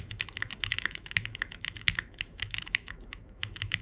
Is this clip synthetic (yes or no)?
yes